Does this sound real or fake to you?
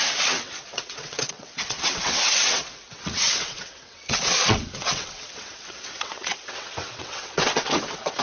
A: fake